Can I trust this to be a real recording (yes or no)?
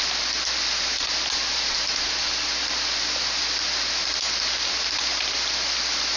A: yes